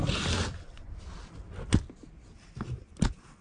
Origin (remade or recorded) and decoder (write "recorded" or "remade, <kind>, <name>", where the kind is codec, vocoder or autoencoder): recorded